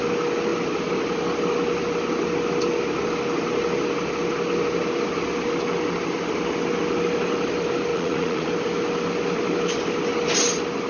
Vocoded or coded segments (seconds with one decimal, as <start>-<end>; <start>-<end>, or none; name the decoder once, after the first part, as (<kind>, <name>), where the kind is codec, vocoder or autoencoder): 7.9-8.5 (vocoder, Vocos)